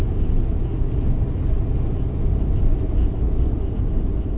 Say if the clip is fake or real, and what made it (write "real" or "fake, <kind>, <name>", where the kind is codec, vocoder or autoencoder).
real